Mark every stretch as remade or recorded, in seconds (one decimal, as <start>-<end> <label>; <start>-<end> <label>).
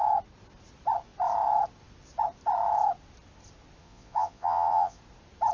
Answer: 0.0-3.8 recorded; 3.8-5.0 remade; 5.0-5.5 recorded